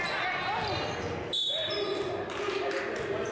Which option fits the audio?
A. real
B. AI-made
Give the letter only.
A